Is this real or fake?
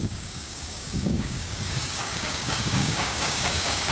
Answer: fake